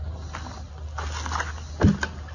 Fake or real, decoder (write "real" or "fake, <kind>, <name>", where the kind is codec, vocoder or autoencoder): real